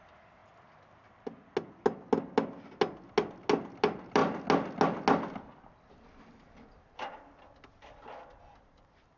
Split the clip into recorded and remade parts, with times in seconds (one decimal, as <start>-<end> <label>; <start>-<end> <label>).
0.0-9.2 recorded